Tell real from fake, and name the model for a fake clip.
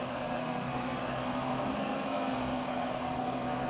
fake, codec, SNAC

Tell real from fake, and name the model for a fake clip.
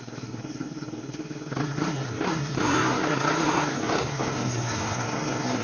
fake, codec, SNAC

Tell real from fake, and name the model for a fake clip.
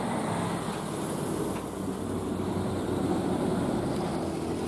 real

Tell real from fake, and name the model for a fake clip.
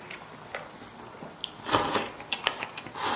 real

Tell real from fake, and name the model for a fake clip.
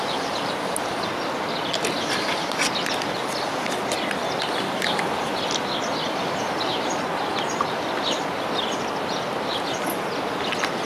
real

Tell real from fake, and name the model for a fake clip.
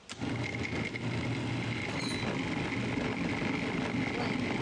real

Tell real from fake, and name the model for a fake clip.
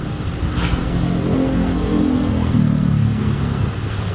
fake, codec, SNAC